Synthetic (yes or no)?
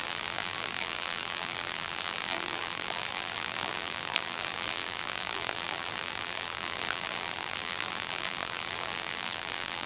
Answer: yes